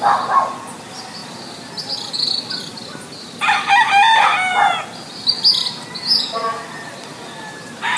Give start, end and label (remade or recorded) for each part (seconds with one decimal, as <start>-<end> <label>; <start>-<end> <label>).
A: 0.0-8.0 recorded